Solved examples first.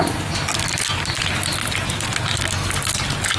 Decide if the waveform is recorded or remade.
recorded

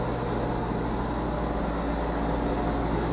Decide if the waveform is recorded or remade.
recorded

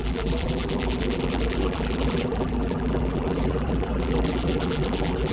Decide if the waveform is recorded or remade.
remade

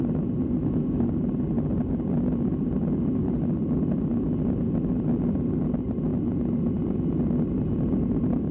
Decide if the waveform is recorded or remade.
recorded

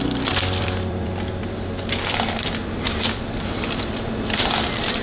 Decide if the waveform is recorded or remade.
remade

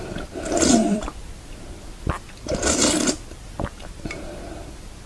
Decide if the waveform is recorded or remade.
remade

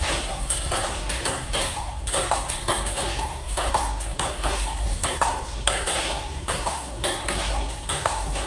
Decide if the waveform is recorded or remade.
remade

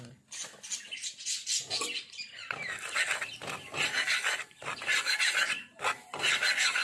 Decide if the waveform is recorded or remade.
recorded